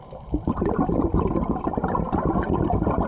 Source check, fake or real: real